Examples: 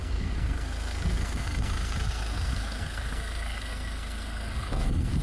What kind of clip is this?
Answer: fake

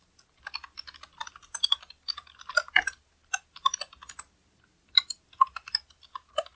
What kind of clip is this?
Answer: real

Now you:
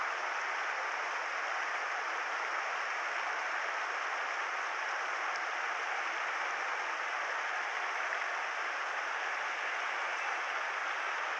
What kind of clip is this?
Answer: real